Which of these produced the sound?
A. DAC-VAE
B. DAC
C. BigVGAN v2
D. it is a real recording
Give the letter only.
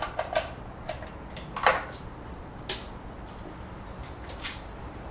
D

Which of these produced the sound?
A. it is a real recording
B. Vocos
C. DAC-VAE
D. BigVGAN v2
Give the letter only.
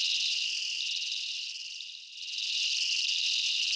A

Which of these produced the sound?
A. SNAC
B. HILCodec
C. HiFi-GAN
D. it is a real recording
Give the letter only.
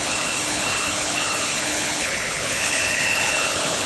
B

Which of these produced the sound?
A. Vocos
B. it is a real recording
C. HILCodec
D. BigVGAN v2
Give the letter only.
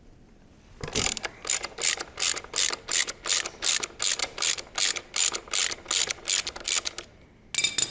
B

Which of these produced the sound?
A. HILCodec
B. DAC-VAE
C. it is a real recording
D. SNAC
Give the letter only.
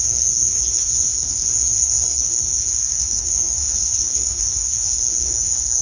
D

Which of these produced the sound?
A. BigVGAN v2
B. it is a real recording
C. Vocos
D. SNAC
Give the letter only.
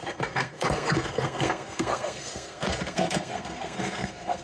D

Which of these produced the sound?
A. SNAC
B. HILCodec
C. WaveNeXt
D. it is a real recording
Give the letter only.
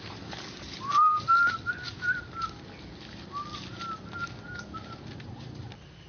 D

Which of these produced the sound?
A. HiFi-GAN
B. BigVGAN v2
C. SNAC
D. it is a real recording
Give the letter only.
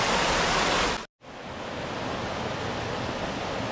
D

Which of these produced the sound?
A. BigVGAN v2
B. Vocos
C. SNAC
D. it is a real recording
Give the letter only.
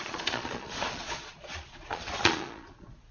B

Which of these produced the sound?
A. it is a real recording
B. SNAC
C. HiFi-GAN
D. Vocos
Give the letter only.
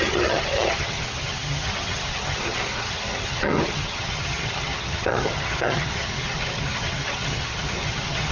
C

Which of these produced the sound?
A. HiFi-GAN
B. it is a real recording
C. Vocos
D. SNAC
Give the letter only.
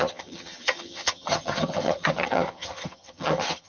A